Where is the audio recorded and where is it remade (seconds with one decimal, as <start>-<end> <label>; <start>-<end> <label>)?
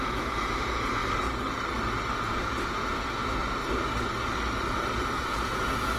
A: 0.0-1.0 remade; 1.0-2.2 recorded; 2.2-3.4 remade; 3.4-5.2 recorded; 5.2-6.0 remade